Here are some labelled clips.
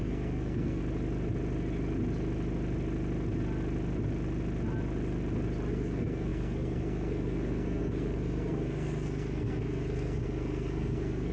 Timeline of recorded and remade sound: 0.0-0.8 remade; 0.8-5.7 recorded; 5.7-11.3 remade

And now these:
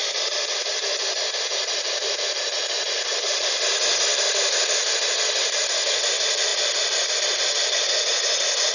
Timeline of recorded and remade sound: 0.0-3.4 remade; 3.4-4.1 recorded; 4.1-4.9 remade; 4.9-8.7 recorded

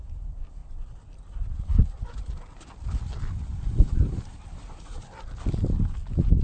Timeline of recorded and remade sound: 0.0-6.4 recorded